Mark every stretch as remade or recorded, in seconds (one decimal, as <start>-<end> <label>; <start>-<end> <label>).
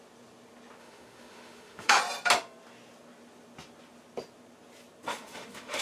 0.0-0.8 recorded; 0.8-2.0 remade; 2.0-5.1 recorded; 5.1-5.8 remade